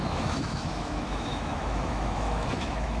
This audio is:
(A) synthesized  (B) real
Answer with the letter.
A